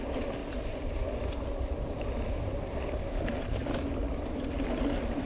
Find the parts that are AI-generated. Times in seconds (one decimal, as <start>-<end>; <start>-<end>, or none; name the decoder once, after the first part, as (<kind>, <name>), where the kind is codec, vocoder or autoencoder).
0.0-3.6 (vocoder, BigVGAN v2); 4.8-5.3